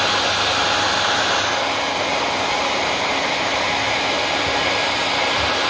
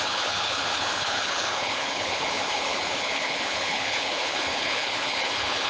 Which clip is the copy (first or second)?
second